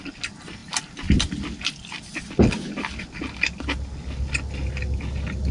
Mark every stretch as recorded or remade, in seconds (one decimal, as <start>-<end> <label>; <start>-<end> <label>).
0.0-5.5 recorded